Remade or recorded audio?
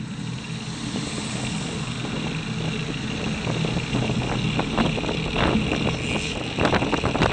recorded